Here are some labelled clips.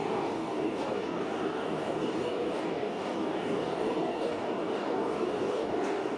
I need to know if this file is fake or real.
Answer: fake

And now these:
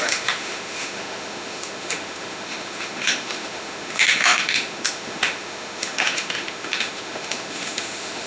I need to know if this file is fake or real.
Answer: fake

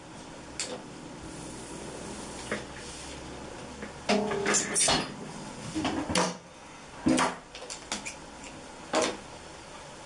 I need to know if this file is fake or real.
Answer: real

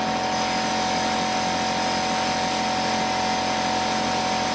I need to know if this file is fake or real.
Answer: real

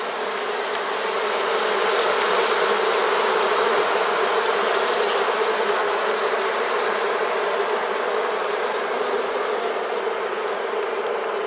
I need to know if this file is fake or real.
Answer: fake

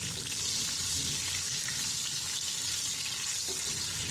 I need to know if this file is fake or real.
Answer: real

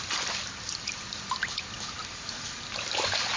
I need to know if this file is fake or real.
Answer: real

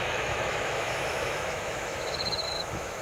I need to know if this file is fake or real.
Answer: fake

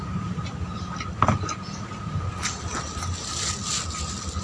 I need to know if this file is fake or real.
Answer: real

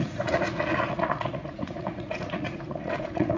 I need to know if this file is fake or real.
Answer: fake